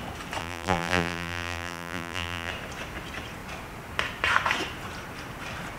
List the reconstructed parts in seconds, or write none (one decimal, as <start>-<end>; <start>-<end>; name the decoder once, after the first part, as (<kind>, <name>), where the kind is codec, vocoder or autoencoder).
0.4-2.5 (vocoder, BigVGAN v2)